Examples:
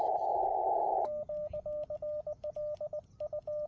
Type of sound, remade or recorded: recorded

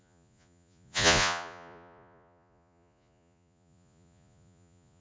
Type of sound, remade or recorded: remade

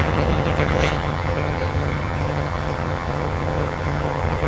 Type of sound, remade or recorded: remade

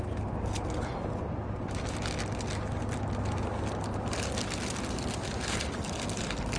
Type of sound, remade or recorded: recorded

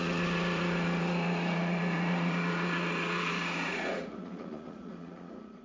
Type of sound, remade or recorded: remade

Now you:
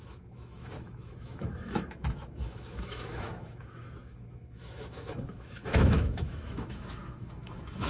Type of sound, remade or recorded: remade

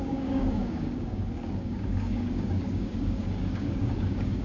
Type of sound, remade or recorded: remade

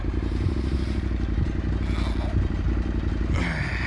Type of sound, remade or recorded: recorded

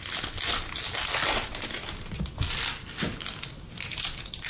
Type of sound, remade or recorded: recorded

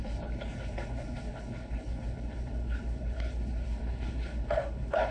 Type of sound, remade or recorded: remade